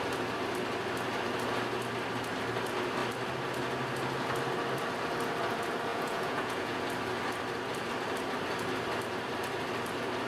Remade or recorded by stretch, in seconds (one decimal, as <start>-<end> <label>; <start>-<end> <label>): 0.0-5.9 recorded; 5.9-6.8 remade; 6.8-10.3 recorded